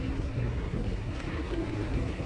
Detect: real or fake fake